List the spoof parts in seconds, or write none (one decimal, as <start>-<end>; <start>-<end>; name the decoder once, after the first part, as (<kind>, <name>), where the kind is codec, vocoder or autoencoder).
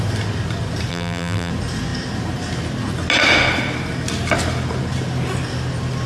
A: 0.9-1.5 (vocoder, BigVGAN v2)